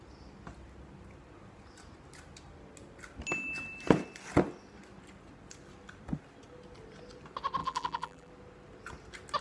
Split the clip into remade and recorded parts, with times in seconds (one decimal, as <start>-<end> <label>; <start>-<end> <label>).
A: 0.0-7.6 recorded; 7.6-8.3 remade; 8.3-9.4 recorded